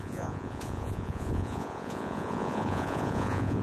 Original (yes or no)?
no